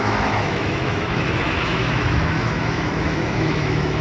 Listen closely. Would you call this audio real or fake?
fake